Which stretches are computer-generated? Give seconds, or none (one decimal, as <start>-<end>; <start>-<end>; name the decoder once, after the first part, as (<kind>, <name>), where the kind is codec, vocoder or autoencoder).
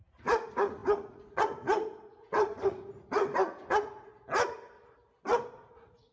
0.0-4.1 (vocoder, Vocos); 5.5-6.1